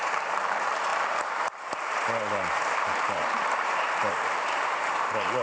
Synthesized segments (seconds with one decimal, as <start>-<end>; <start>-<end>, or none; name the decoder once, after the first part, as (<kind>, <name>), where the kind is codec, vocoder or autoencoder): 0.0-5.4 (vocoder, BigVGAN v2)